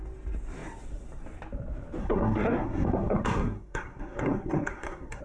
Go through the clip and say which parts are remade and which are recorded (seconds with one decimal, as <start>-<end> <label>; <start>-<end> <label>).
0.0-2.0 recorded; 2.0-5.2 remade